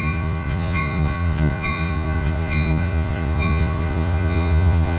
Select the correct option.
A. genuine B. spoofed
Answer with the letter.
B